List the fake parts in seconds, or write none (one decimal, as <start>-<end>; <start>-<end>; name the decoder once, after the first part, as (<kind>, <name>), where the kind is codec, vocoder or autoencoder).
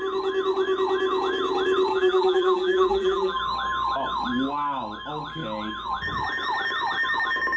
1.9-3.4 (vocoder, BigVGAN v2)